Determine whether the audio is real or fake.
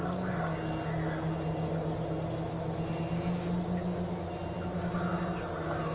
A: real